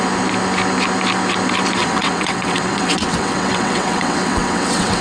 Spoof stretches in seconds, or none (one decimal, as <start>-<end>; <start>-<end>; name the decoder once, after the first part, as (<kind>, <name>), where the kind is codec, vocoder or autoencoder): 1.8-5.0 (vocoder, WaveNeXt)